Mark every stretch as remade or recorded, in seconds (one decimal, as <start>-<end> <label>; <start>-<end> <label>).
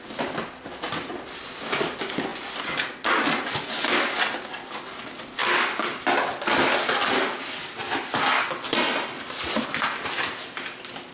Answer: 0.0-11.1 recorded